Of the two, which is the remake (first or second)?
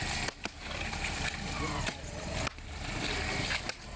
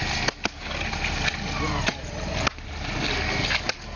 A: first